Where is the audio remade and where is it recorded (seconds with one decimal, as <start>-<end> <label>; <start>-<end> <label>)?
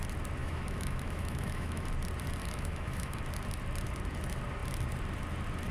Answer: 0.0-0.4 recorded; 0.4-1.9 remade; 1.9-2.4 recorded; 2.4-3.2 remade; 3.2-5.7 recorded